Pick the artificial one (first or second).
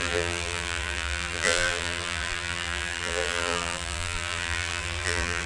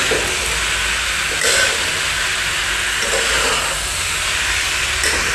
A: first